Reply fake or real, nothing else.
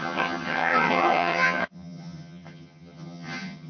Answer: fake